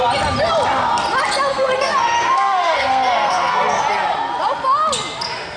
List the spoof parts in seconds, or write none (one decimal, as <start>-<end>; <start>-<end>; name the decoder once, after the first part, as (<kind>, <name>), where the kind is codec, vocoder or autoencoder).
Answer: 1.5-3.8 (codec, SNAC)